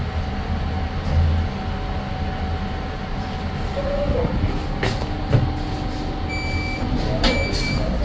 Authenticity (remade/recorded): recorded